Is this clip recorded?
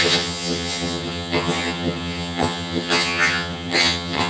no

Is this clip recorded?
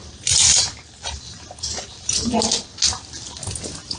yes